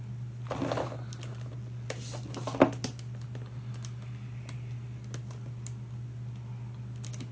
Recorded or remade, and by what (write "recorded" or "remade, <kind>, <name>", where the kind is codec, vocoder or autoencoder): recorded